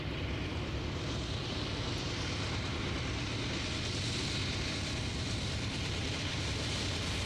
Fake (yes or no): yes